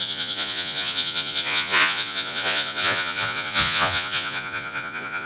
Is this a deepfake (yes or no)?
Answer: yes